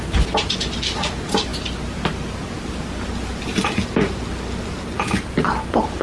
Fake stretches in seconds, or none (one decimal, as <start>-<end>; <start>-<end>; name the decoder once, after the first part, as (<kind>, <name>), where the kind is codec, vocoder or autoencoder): none